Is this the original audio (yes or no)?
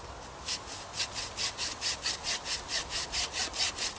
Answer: yes